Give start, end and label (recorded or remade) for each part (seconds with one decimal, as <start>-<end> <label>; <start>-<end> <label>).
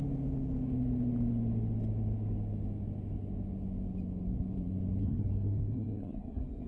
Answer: 0.0-5.0 recorded; 5.0-6.7 remade